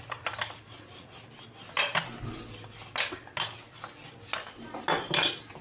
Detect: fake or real real